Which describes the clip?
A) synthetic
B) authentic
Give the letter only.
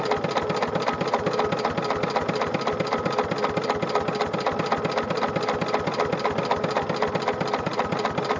B